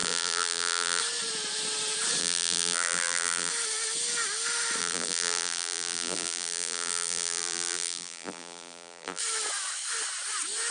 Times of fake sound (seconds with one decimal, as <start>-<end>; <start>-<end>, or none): 0.0-1.0; 2.2-3.5; 4.8-9.2